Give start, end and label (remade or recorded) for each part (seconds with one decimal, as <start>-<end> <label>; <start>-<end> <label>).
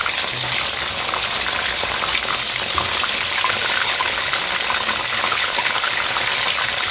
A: 0.0-3.8 recorded; 3.8-4.4 remade; 4.4-5.3 recorded; 5.3-5.9 remade; 5.9-6.9 recorded